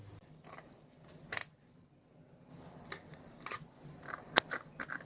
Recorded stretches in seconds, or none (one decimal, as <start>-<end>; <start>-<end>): 0.0-5.1